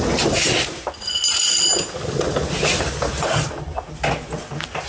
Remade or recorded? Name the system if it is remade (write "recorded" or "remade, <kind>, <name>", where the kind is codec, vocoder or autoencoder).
recorded